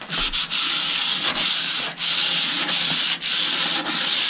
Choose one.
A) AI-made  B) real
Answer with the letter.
B